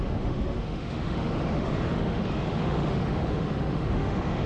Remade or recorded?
remade